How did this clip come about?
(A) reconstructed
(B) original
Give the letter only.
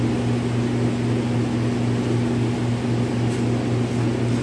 B